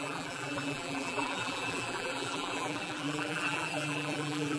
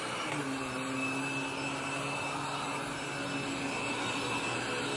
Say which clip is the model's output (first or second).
first